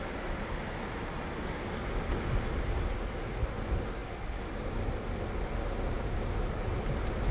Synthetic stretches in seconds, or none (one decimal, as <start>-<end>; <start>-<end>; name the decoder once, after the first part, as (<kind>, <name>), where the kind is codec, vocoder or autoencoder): none